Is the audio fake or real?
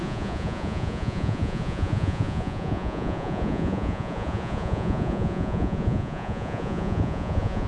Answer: fake